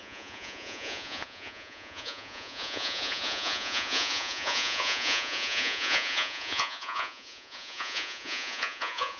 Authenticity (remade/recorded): remade